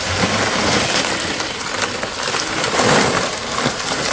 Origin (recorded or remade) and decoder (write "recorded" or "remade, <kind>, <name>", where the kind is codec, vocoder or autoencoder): recorded